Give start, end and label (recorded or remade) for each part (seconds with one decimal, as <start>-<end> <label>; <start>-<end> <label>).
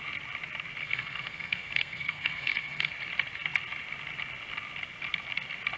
0.0-0.8 recorded; 0.8-2.9 remade; 2.9-5.8 recorded